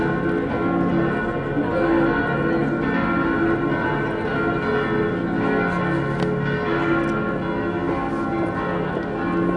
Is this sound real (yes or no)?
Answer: yes